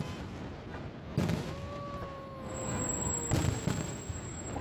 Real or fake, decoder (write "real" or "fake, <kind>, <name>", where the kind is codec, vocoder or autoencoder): real